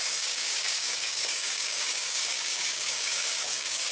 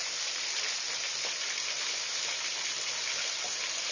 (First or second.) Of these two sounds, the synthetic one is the first